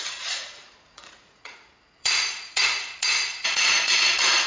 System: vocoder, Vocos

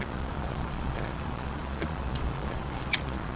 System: vocoder, Vocos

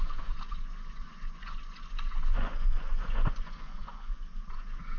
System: vocoder, Vocos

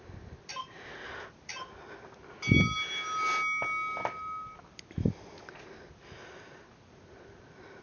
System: none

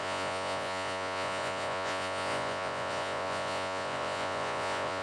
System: vocoder, Vocos